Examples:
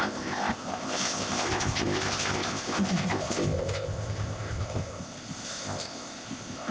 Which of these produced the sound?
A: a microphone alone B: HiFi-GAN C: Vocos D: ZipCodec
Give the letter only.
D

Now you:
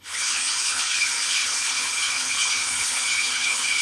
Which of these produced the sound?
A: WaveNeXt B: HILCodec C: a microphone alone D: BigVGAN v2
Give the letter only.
B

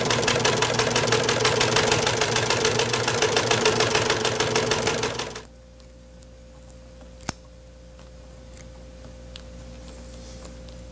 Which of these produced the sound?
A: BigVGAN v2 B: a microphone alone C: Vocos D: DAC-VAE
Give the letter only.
B